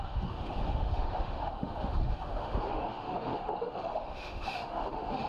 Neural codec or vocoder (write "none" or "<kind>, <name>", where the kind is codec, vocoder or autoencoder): autoencoder, DAC-VAE